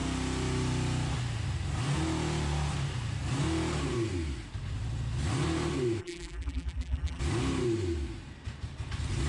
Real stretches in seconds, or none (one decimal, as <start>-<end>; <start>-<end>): 0.0-6.0; 7.2-9.3